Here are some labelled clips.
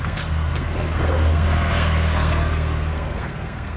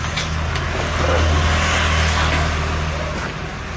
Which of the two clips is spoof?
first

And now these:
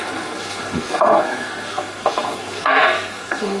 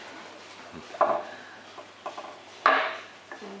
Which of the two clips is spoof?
first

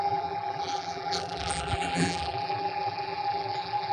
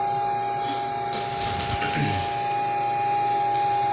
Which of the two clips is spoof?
first